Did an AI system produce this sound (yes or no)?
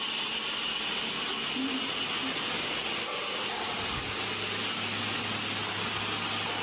no